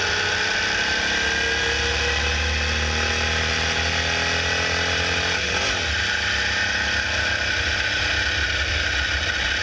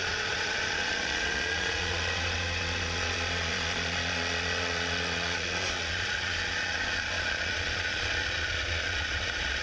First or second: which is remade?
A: second